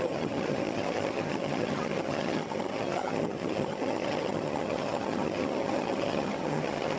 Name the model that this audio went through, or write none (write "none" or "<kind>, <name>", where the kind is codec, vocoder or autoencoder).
vocoder, HiFi-GAN